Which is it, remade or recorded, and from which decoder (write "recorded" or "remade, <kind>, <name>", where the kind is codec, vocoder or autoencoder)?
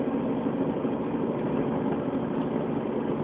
recorded